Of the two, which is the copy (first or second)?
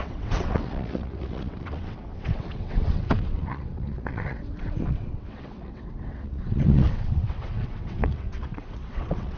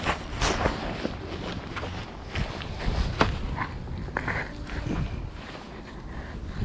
first